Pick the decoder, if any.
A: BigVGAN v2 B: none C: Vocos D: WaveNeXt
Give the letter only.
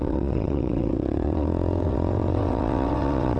D